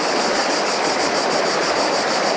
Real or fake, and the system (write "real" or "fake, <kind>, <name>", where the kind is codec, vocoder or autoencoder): real